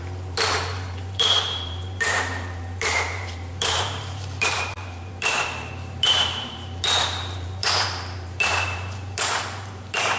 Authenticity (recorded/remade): remade